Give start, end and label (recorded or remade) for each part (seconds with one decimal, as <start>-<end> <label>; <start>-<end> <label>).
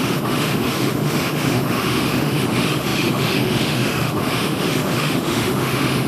0.0-6.1 remade